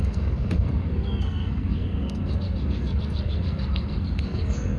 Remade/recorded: remade